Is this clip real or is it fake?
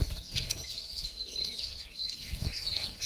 fake